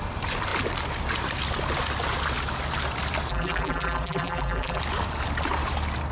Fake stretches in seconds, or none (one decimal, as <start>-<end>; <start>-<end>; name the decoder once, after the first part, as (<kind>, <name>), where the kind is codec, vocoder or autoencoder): 3.3-4.8 (vocoder, BigVGAN v2)